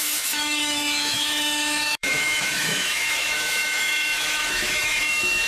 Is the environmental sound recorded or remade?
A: remade